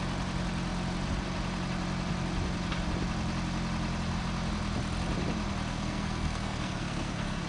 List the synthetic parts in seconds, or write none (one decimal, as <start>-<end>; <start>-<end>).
5.7-7.5